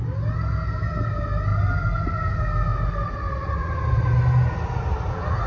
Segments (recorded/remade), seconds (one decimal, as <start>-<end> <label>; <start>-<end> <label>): 0.0-5.5 recorded